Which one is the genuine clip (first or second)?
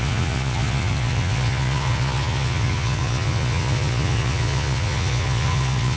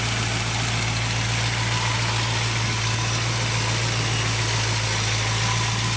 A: second